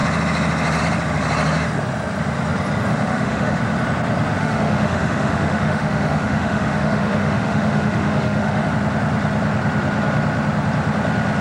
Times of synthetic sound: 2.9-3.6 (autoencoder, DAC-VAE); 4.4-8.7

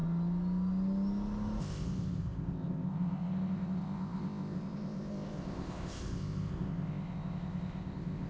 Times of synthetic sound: 1.6-8.3 (codec, ZipCodec)

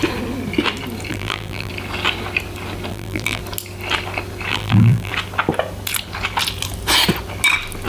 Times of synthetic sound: 1.1-1.7 (vocoder, BigVGAN v2); 2.9-3.4; 4.5-5.1